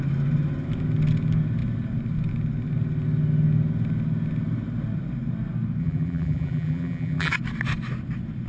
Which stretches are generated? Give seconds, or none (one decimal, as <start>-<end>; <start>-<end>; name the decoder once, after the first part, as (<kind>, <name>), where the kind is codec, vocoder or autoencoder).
5.8-7.3 (vocoder, BigVGAN v2)